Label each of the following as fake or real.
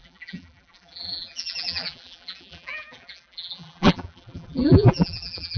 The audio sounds fake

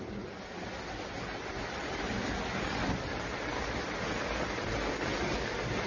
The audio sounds real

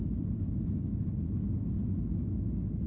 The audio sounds real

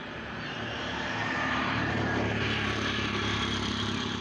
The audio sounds fake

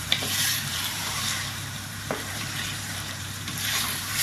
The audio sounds fake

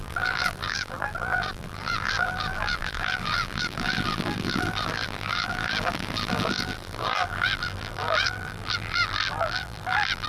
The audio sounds fake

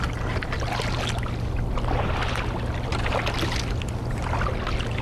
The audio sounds real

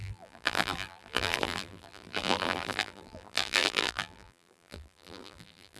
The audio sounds fake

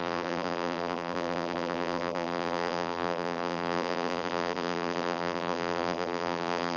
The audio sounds fake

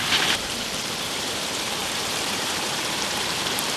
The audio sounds fake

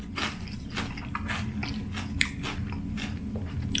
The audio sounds real